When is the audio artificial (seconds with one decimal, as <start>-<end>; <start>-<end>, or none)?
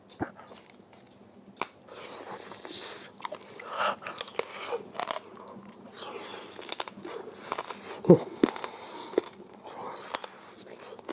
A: none